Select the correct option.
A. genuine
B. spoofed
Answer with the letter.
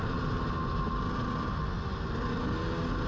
A